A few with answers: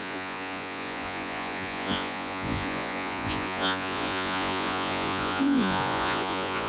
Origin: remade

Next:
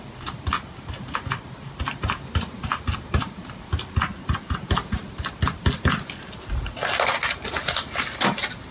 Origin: recorded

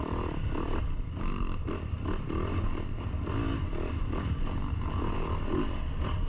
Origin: recorded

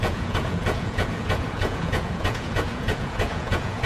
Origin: remade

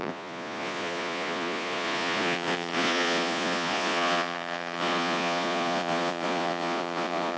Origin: remade